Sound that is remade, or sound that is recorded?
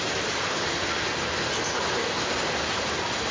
recorded